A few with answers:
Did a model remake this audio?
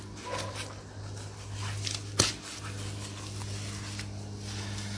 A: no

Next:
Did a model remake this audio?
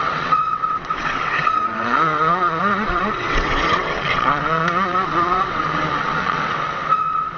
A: yes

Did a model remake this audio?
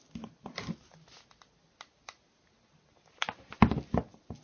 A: no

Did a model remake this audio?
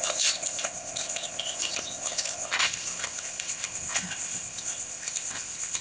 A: yes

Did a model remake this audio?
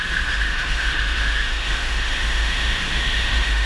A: yes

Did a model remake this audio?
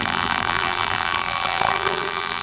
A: yes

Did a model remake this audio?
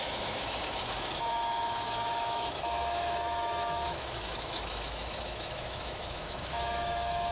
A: yes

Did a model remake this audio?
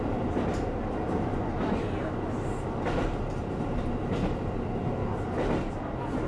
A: no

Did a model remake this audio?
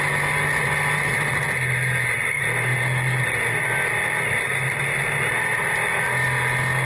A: no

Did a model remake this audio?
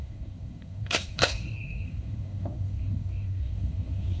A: yes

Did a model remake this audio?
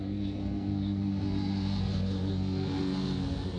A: yes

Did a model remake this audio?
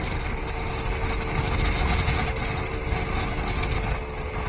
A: no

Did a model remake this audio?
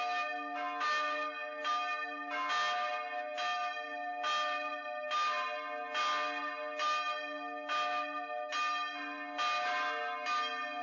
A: no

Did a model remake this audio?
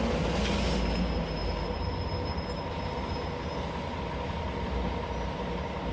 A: no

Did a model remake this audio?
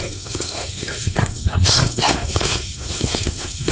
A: yes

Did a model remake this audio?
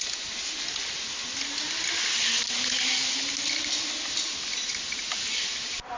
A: no